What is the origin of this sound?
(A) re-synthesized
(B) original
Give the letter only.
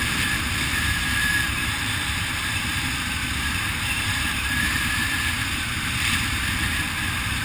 A